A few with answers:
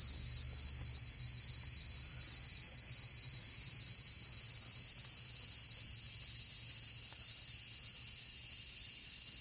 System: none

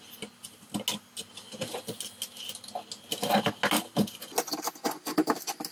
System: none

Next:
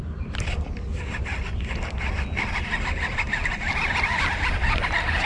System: none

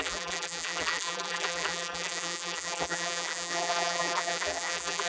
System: vocoder, BigVGAN v2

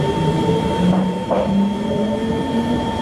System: vocoder, BigVGAN v2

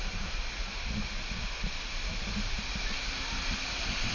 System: none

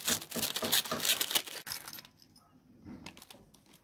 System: none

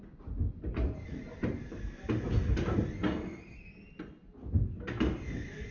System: none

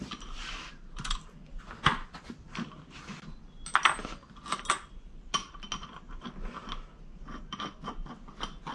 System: none